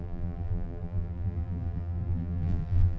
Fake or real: fake